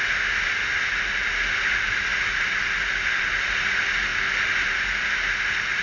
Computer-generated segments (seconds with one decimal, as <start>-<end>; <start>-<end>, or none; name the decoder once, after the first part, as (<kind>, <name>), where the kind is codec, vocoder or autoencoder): none